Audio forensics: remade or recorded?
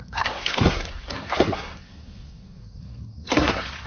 remade